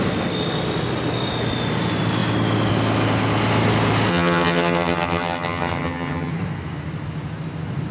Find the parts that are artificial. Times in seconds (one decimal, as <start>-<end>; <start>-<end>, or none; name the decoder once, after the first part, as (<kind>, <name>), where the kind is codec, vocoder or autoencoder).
4.1-6.3 (vocoder, HiFi-GAN)